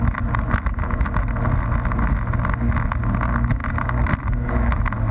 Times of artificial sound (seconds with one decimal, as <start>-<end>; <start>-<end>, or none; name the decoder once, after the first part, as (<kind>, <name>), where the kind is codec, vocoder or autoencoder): none